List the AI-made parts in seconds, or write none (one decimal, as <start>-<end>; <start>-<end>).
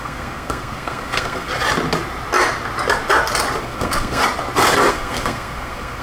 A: 0.0-1.5; 3.6-4.2; 4.9-6.0